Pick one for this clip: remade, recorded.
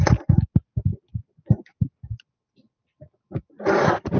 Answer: recorded